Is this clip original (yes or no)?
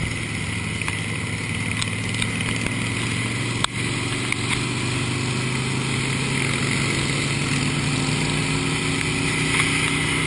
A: yes